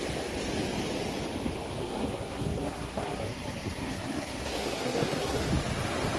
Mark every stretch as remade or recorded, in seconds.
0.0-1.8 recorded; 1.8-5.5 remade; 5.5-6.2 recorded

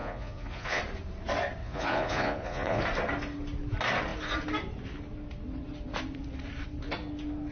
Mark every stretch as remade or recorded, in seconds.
0.0-0.8 remade; 0.8-1.6 recorded; 1.6-2.8 remade; 2.8-7.5 recorded

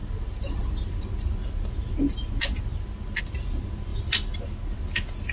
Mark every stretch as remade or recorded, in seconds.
0.0-3.9 recorded; 3.9-4.4 remade; 4.4-5.3 recorded